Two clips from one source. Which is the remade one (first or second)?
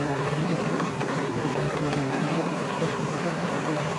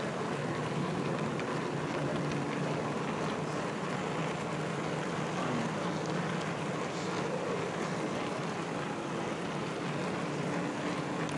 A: first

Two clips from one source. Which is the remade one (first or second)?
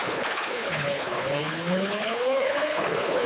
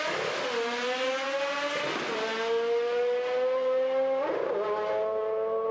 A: first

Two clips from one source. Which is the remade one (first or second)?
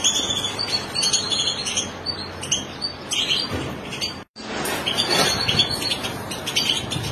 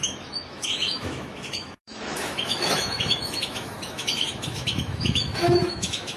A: second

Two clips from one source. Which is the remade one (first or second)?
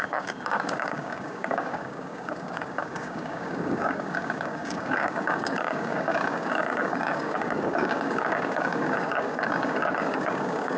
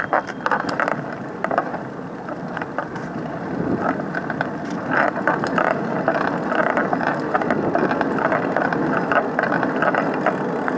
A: first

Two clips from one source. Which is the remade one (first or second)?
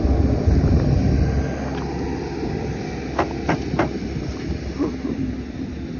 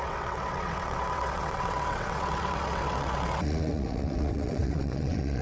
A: second